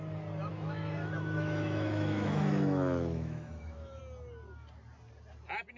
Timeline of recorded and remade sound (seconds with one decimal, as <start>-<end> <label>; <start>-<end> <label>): 0.0-0.5 recorded; 0.5-4.0 remade; 4.0-5.8 recorded